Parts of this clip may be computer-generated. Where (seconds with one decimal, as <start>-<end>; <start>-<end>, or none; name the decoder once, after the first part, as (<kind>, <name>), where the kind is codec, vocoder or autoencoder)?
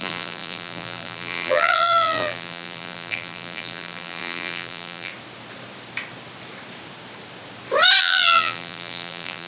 0.0-5.1 (vocoder, BigVGAN v2); 8.0-9.5